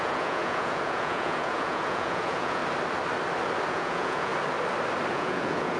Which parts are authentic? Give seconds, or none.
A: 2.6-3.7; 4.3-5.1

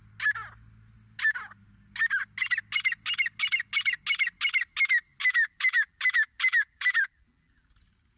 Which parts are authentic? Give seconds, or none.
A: 0.0-5.2; 7.7-8.2

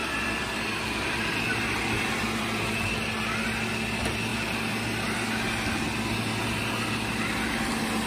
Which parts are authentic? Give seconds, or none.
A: 2.1-8.1

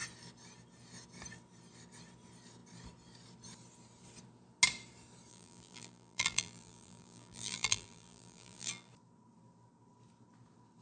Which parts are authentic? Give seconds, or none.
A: 0.0-5.3; 8.9-10.8

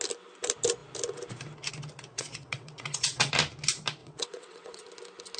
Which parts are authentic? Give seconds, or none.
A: 0.0-2.1; 3.3-4.0; 4.8-5.4

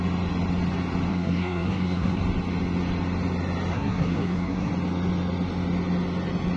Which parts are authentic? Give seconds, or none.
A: 0.0-1.1; 2.2-3.7; 4.7-6.6

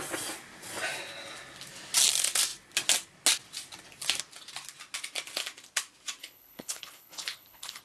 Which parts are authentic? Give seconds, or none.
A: 0.0-6.2

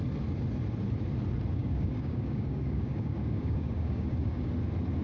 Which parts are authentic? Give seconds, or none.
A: 0.0-1.5; 4.5-5.0